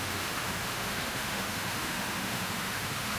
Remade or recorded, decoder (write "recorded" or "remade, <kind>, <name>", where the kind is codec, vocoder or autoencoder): remade, autoencoder, DAC-VAE